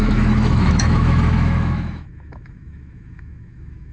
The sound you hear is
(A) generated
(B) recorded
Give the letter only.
A